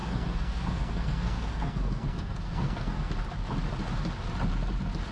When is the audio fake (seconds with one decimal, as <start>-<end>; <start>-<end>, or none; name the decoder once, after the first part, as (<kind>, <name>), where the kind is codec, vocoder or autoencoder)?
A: 0.0-3.1 (codec, SNAC)